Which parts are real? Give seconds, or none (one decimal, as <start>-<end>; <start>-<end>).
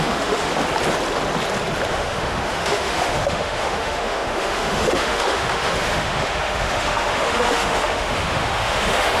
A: 0.5-1.9